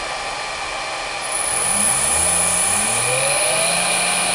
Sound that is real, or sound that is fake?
real